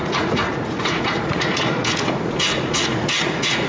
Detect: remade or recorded remade